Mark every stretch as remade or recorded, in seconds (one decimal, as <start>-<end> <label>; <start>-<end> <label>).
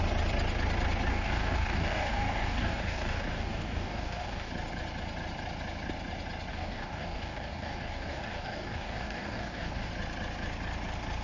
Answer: 0.0-1.1 recorded; 1.1-4.5 remade; 4.5-6.5 recorded; 6.5-9.9 remade; 9.9-11.2 recorded